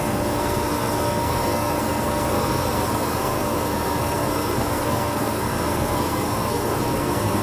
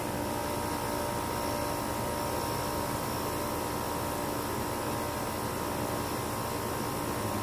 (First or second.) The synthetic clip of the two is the first